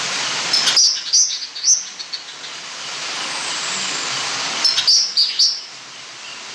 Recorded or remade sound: recorded